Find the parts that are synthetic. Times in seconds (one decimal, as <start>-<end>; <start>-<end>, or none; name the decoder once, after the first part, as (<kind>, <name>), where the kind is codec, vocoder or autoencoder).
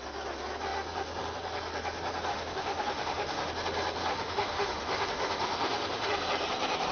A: 2.3-3.5 (autoencoder, DAC-VAE); 4.1-6.1